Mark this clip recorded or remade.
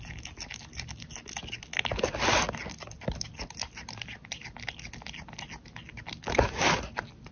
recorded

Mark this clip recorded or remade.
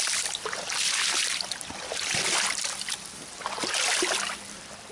remade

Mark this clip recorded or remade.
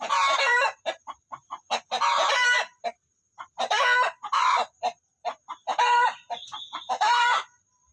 remade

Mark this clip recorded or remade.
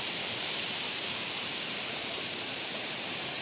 remade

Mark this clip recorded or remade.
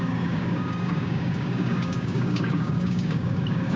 remade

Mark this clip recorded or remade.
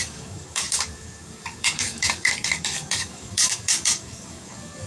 remade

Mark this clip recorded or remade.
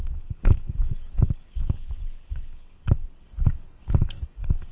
remade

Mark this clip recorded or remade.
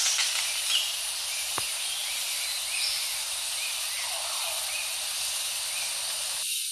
recorded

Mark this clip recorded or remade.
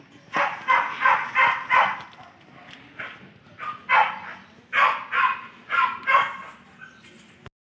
recorded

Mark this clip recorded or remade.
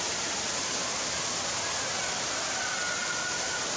recorded